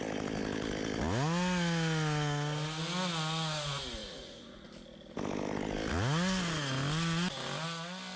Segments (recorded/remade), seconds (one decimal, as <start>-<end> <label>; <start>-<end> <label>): 0.0-4.0 recorded; 4.0-4.7 remade; 4.7-8.2 recorded